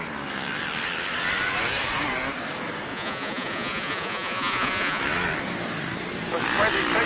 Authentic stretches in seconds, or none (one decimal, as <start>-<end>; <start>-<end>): 0.0-2.9; 5.0-7.1